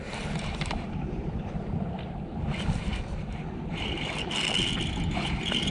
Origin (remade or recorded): recorded